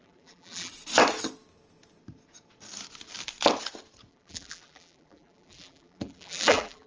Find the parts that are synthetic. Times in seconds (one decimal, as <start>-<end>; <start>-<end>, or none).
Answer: 0.0-0.7; 4.1-6.9